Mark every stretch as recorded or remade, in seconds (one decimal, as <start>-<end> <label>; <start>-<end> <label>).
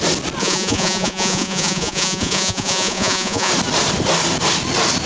0.0-0.4 recorded; 0.4-3.5 remade; 3.5-5.1 recorded